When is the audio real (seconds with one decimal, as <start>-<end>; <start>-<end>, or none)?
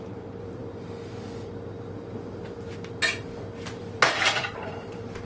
0.6-3.8